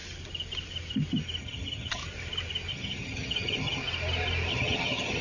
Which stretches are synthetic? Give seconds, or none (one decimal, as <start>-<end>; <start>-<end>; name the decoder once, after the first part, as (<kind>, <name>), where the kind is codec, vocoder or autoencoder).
1.4-2.0 (vocoder, HiFi-GAN); 2.7-3.8; 4.5-5.2